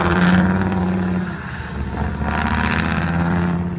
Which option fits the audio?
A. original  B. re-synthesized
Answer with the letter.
B